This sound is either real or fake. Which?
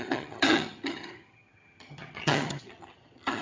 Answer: fake